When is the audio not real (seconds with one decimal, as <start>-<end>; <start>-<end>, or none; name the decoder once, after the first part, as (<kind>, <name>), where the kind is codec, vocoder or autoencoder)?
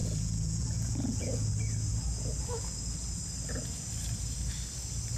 0.0-1.5 (vocoder, Vocos)